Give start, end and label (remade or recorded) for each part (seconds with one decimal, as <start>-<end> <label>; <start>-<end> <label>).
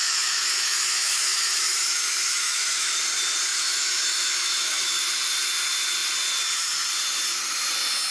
0.0-2.9 remade; 2.9-3.5 recorded; 3.5-5.0 remade; 5.0-8.1 recorded